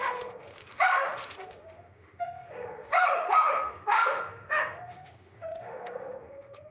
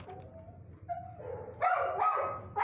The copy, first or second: first